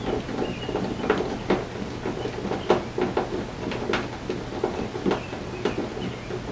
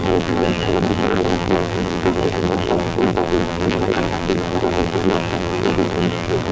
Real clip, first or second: first